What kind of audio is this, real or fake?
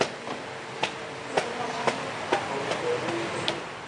real